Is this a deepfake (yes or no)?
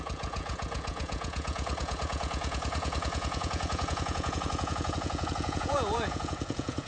yes